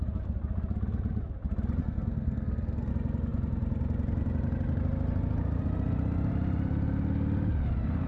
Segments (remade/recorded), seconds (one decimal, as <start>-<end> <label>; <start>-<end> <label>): 0.0-1.8 recorded; 1.8-2.9 remade; 2.9-8.1 recorded